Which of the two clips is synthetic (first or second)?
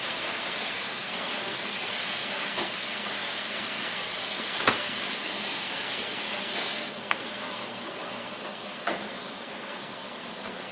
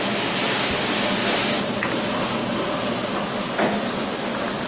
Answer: first